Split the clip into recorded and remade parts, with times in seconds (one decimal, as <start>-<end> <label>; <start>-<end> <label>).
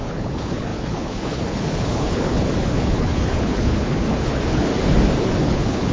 0.0-4.7 remade; 4.7-5.2 recorded; 5.2-5.9 remade